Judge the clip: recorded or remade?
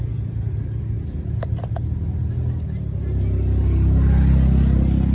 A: recorded